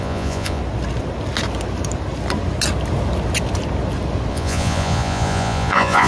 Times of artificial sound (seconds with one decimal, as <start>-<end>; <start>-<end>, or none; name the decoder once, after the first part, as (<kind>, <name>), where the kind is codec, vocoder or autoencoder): 0.0-0.6 (vocoder, Vocos); 4.3-6.1